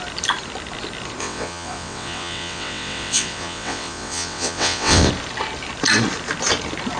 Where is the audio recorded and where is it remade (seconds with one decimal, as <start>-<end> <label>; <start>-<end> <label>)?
0.0-1.2 recorded; 1.2-5.1 remade; 5.1-7.0 recorded